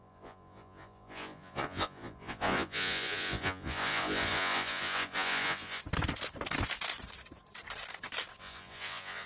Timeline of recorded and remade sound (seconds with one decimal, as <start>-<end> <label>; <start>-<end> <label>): 0.0-5.8 remade; 5.8-8.4 recorded; 8.4-9.3 remade